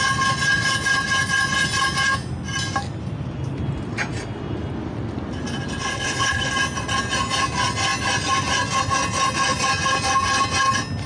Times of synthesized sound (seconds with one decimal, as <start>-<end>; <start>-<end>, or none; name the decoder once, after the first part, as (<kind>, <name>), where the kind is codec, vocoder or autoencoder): 5.9-6.5 (codec, HILCodec)